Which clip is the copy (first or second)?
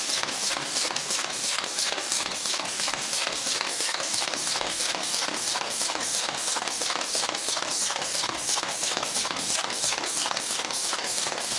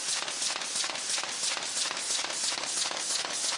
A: first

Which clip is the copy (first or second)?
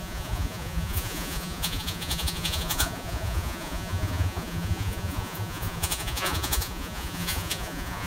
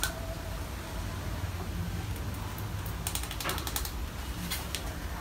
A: first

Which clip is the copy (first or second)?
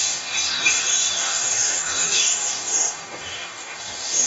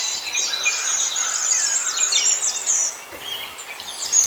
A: first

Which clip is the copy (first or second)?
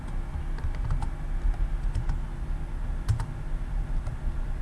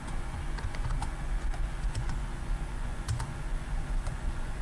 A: second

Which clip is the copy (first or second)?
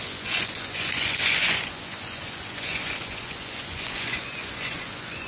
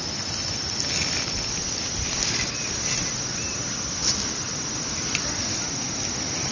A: first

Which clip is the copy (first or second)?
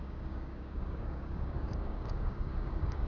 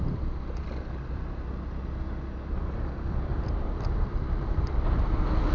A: first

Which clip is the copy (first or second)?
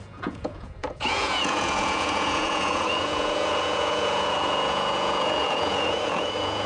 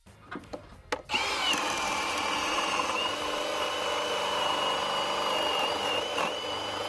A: first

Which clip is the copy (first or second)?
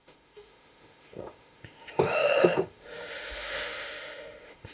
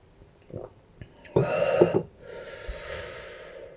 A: first